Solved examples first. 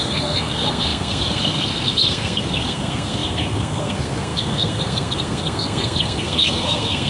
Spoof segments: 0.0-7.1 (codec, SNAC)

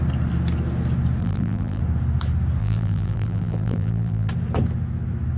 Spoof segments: 1.2-1.8 (vocoder, BigVGAN v2); 2.6-4.3

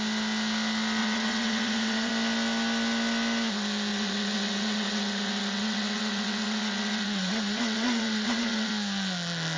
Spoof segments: 1.0-2.1 (vocoder, WaveNeXt); 3.9-8.7